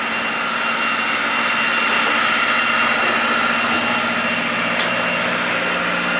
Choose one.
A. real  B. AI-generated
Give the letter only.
A